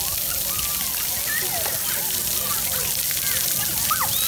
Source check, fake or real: real